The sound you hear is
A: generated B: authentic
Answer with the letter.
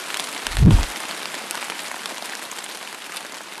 B